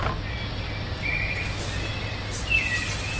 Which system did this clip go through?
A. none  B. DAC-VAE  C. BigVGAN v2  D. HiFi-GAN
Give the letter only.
A